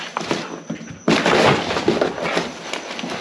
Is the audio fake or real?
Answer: real